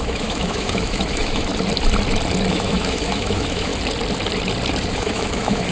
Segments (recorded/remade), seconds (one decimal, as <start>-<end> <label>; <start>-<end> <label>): 0.0-1.5 remade; 1.5-2.5 recorded; 2.5-3.7 remade; 3.7-4.9 recorded; 4.9-5.7 remade